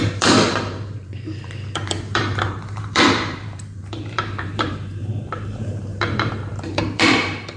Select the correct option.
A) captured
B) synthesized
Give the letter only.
B